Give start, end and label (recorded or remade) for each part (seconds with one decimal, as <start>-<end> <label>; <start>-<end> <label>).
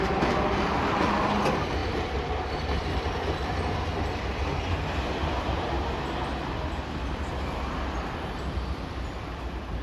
0.0-1.8 recorded; 1.8-2.9 remade; 2.9-9.8 recorded